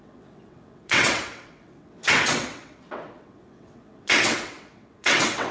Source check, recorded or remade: remade